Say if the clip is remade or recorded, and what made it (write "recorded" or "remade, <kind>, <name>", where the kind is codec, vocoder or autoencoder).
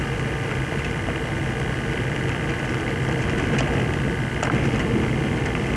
recorded